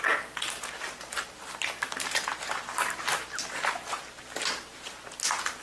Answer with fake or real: real